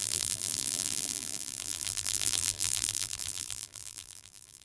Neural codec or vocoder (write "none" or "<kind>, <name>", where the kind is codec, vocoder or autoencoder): vocoder, BigVGAN v2